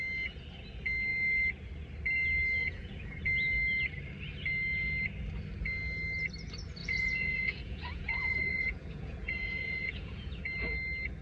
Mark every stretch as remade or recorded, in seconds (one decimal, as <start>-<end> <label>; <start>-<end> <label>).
0.0-2.6 recorded; 2.6-3.2 remade; 3.2-6.8 recorded; 6.8-10.4 remade; 10.4-11.2 recorded